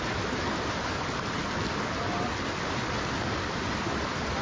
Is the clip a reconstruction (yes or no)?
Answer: no